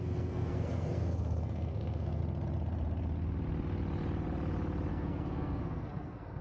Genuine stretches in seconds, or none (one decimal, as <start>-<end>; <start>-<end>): 2.2-4.9